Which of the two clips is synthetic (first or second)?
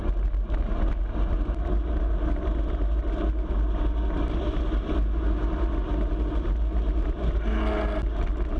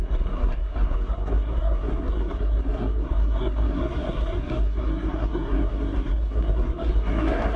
second